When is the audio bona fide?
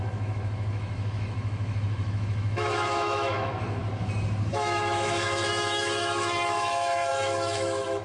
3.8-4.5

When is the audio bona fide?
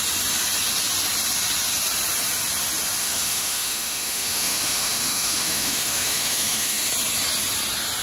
0.0-3.0; 6.9-8.0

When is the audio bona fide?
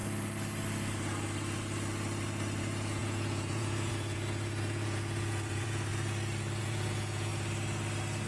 0.0-2.6; 5.9-6.6; 7.3-8.3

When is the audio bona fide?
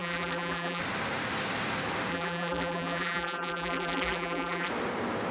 0.8-2.1; 4.7-5.3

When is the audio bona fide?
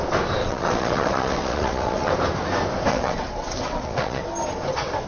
0.0-0.4; 2.1-2.9; 4.2-5.1